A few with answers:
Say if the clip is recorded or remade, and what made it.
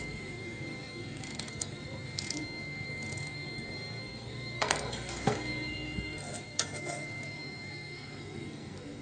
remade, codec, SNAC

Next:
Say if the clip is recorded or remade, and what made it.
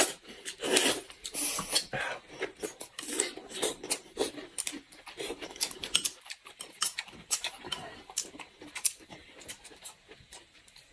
remade, vocoder, BigVGAN v2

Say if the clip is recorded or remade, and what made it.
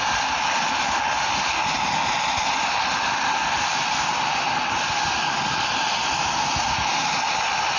recorded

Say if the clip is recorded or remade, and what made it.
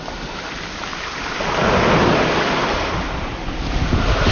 recorded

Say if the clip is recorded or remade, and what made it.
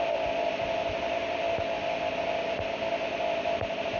recorded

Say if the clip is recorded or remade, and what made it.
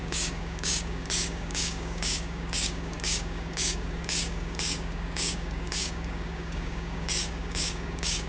remade, codec, DAC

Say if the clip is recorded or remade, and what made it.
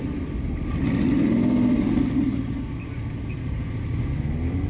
recorded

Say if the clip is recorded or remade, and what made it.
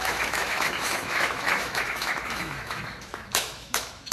remade, autoencoder, DAC-VAE